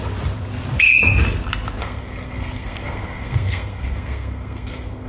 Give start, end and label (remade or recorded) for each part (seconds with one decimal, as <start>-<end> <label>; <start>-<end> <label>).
0.0-1.8 recorded; 1.8-5.1 remade